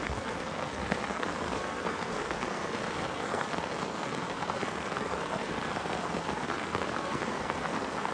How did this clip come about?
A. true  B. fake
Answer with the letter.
B